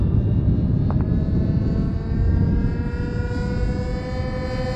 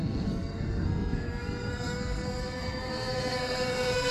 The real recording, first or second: first